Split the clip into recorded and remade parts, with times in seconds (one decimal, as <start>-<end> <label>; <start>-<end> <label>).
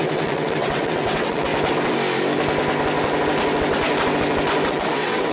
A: 0.0-1.5 remade; 1.5-4.7 recorded; 4.7-5.3 remade